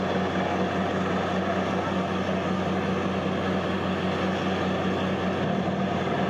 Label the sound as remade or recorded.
recorded